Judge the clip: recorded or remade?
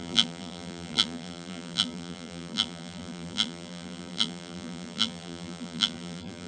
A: remade